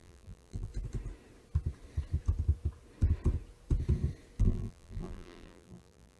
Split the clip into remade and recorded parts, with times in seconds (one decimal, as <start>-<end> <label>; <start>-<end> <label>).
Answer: 0.0-0.7 remade; 0.7-4.4 recorded; 4.4-6.2 remade

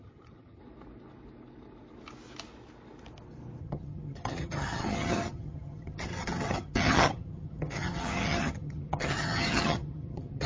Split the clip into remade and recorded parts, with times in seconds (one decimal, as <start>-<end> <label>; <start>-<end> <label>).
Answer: 0.0-0.6 remade; 0.6-3.6 recorded; 3.6-10.5 remade

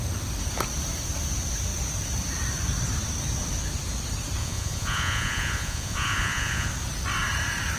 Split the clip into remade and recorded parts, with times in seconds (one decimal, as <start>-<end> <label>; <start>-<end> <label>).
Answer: 0.0-4.4 recorded; 4.4-6.7 remade; 6.7-7.8 recorded

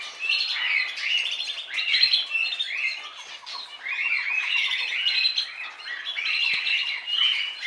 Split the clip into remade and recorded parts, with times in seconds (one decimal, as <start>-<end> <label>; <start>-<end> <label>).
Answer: 0.0-7.7 recorded

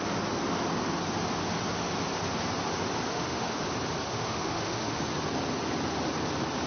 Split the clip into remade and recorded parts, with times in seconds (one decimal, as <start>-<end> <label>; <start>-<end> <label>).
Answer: 0.0-3.1 recorded; 3.1-3.6 remade; 3.6-4.1 recorded; 4.1-5.0 remade; 5.0-6.7 recorded

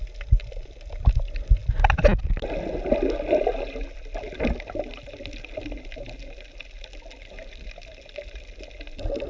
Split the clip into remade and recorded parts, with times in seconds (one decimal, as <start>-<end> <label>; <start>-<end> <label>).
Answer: 0.0-9.3 recorded

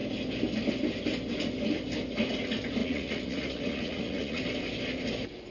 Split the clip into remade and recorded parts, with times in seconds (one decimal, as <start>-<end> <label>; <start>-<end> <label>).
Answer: 0.0-2.8 recorded; 2.8-4.4 remade; 4.4-5.5 recorded